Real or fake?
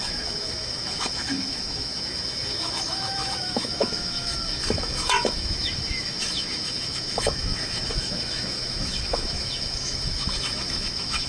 fake